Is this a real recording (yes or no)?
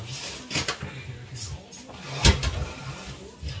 yes